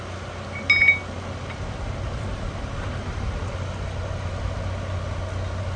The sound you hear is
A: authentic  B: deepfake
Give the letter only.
A